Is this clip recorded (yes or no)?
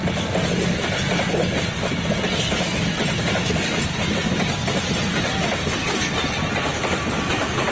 yes